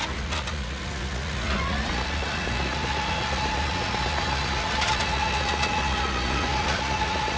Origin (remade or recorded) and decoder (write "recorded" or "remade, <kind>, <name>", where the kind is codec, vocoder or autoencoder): remade, vocoder, Vocos